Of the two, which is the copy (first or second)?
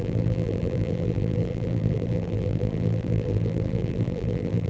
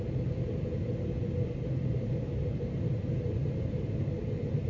first